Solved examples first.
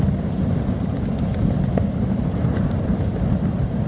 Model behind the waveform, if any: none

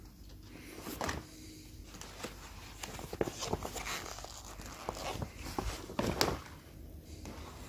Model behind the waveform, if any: none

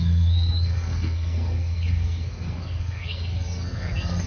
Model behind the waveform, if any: codec, SNAC